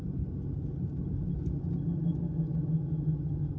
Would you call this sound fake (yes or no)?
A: no